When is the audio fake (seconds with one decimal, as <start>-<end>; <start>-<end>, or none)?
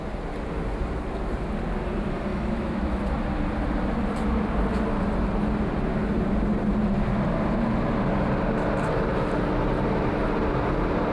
2.3-3.0